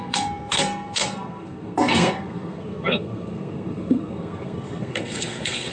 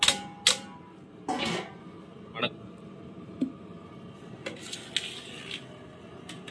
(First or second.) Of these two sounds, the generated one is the first